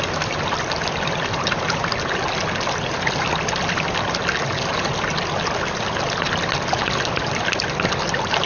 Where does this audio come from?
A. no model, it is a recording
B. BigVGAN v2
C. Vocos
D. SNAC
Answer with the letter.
A